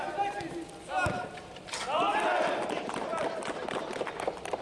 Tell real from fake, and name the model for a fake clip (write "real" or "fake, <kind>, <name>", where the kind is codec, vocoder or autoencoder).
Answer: real